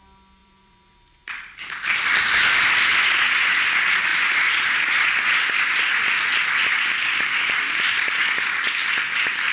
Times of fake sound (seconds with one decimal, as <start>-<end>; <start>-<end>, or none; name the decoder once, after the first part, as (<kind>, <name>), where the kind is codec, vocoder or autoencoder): 0.4-2.7 (vocoder, BigVGAN v2)